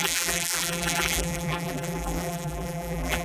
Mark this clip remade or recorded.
remade